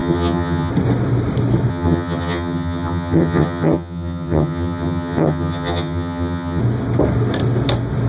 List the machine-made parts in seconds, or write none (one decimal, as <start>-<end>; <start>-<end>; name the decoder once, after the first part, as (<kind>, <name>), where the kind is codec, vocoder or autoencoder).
0.0-0.7 (vocoder, HiFi-GAN); 1.7-6.6